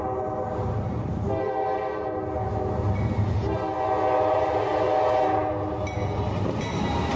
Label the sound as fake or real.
real